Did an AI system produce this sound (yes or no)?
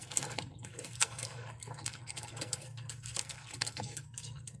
yes